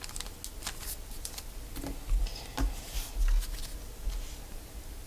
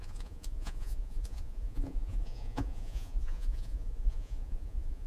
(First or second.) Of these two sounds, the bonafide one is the first